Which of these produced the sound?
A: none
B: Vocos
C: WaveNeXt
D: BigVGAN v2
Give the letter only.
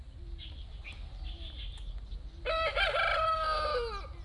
A